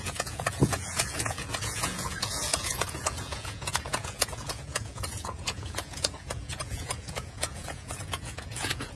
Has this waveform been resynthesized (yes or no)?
yes